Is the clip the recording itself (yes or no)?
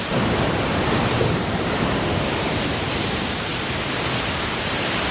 no